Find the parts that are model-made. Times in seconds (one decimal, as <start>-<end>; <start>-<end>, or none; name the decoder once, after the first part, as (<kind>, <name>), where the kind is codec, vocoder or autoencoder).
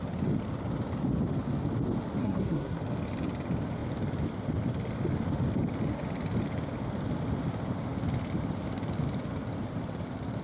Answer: 2.2-2.8 (codec, SNAC)